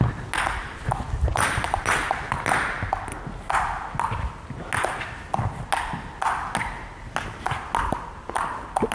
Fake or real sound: real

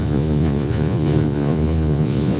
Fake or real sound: fake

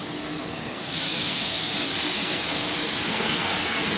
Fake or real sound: fake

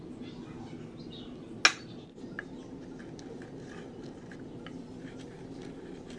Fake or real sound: real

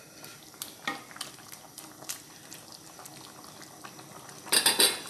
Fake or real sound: real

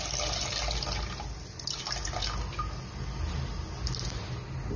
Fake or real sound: real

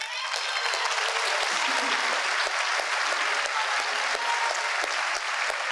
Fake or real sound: real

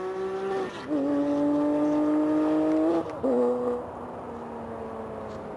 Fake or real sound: real